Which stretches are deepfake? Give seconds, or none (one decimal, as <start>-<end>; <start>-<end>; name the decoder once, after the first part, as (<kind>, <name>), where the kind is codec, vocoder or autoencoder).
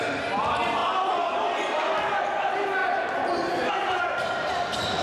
none